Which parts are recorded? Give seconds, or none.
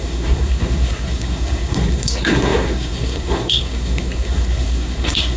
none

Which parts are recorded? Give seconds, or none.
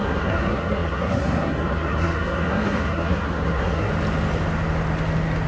3.9-5.5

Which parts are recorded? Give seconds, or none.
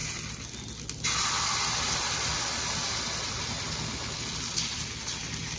0.0-5.6